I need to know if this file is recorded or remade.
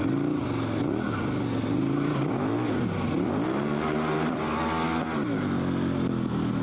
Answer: recorded